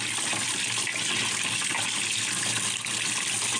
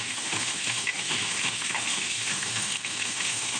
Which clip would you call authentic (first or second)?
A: first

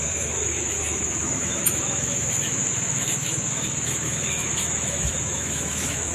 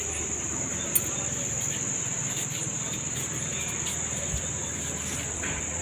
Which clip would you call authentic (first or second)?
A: second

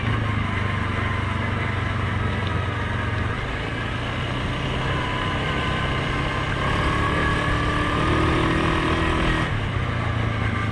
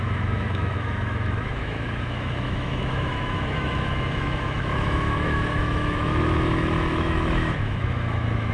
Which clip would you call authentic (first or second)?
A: first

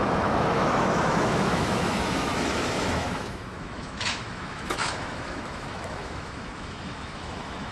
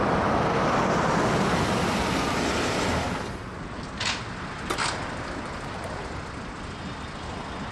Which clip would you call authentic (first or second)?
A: second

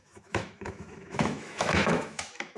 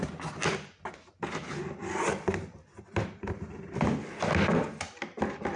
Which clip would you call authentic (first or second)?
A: second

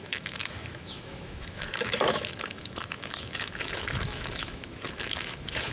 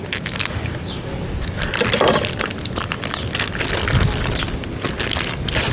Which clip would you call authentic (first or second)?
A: second